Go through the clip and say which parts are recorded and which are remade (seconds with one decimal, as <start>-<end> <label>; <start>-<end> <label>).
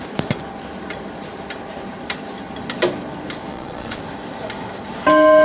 0.0-3.5 recorded; 3.5-4.0 remade; 4.0-5.4 recorded